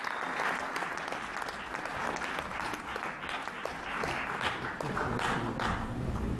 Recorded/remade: recorded